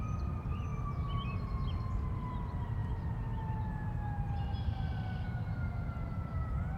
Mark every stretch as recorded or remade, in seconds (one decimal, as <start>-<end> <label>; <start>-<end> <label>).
0.0-0.7 remade; 0.7-1.8 recorded; 1.8-2.8 remade; 2.8-5.7 recorded; 5.7-6.8 remade